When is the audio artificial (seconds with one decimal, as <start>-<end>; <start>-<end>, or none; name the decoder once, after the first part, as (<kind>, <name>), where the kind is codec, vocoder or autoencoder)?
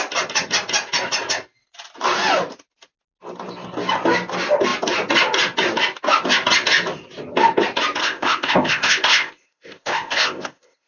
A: 8.0-10.9 (codec, ZipCodec)